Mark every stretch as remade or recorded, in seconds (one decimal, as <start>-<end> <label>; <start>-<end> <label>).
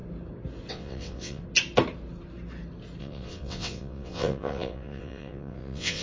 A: 0.0-0.7 recorded; 0.7-1.4 remade; 1.4-3.0 recorded; 3.0-6.0 remade